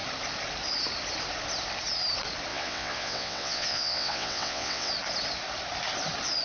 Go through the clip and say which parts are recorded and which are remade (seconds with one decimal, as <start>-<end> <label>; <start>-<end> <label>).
0.0-2.5 recorded; 2.5-4.9 remade; 4.9-6.4 recorded